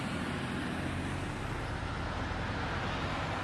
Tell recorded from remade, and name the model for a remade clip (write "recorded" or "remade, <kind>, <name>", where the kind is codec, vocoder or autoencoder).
recorded